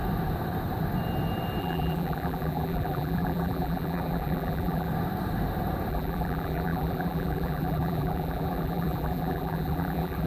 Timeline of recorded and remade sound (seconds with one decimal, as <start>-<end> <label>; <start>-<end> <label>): 0.0-1.6 recorded; 1.6-4.9 remade; 4.9-5.9 recorded; 5.9-10.3 remade